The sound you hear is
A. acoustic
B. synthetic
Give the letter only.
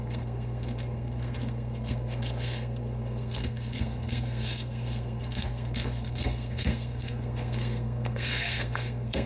B